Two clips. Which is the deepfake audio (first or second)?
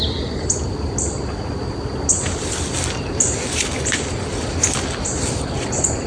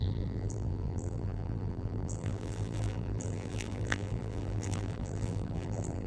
second